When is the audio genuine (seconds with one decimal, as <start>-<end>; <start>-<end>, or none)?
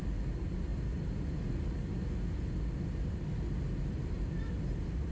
0.0-5.1